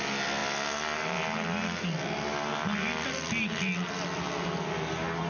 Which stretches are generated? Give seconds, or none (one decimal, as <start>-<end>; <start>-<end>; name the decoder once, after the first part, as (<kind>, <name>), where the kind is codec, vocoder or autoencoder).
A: none